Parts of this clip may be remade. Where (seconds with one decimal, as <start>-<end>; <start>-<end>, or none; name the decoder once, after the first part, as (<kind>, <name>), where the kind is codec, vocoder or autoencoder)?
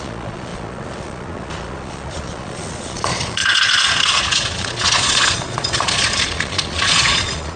0.0-7.6 (vocoder, Vocos)